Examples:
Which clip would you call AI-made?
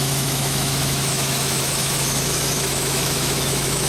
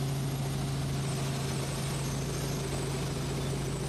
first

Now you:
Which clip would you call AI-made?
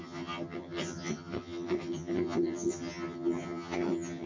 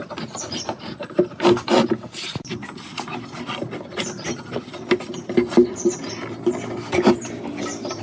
first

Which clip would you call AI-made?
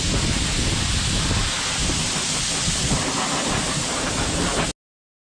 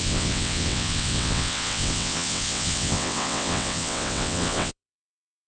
second